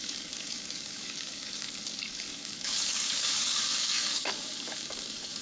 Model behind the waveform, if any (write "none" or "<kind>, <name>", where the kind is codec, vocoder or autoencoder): codec, DAC